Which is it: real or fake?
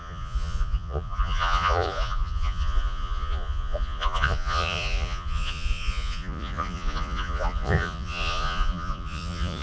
fake